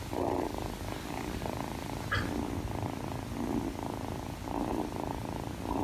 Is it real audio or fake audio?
real